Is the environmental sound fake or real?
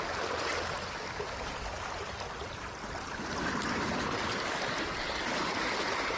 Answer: real